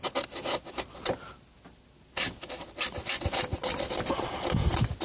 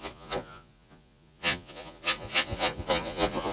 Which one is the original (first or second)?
first